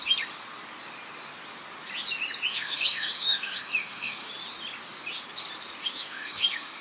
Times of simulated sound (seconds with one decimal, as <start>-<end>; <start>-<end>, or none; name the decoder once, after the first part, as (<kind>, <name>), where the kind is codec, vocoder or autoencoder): 2.5-4.3 (autoencoder, DAC-VAE); 5.8-6.8